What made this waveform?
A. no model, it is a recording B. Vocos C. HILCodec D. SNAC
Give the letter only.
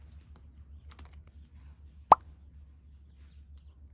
A